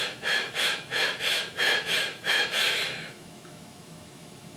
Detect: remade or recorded remade